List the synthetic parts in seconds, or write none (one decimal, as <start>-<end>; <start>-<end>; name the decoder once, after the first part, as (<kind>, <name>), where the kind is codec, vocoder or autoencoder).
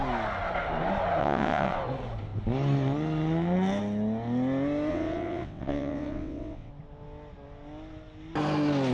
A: 1.2-1.8 (vocoder, WaveNeXt); 4.9-6.7